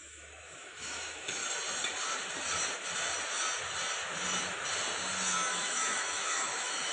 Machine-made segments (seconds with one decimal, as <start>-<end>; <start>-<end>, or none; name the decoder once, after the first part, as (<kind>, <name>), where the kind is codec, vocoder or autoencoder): 0.0-1.4 (autoencoder, DAC-VAE); 5.5-6.9